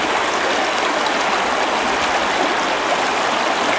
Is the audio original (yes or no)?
yes